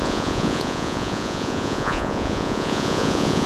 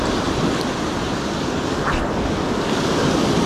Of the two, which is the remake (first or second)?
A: first